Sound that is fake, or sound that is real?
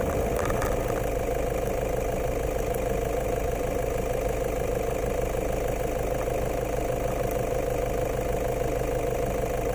real